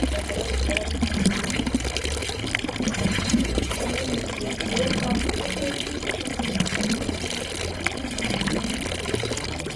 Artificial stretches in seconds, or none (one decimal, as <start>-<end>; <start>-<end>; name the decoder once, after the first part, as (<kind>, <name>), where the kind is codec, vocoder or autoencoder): 2.9-3.9 (vocoder, Vocos)